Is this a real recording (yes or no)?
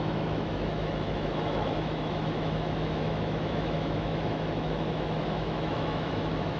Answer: no